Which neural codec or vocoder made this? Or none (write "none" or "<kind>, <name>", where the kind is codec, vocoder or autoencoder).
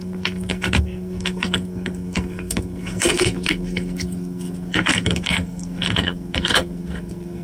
codec, SNAC